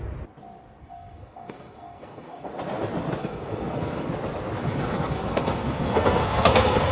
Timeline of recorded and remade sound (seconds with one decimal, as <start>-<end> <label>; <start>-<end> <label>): 0.0-0.8 recorded; 0.8-2.5 remade; 2.5-3.2 recorded; 3.2-4.1 remade; 4.1-4.6 recorded; 4.6-6.9 remade